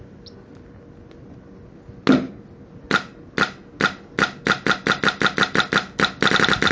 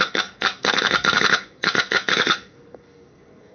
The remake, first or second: second